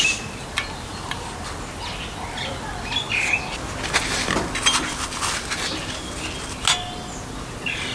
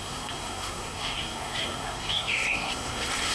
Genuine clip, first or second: first